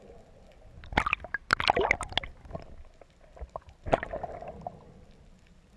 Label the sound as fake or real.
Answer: real